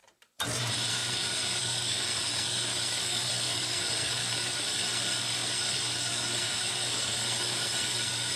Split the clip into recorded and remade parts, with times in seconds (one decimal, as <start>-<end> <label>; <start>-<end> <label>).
0.0-0.9 recorded; 0.9-8.4 remade